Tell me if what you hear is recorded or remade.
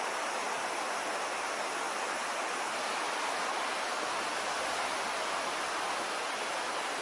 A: recorded